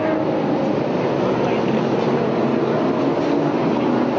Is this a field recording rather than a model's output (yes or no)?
yes